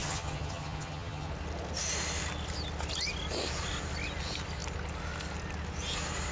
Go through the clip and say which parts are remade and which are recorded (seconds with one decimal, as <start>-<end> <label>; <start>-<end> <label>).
0.0-1.3 remade; 1.3-6.3 recorded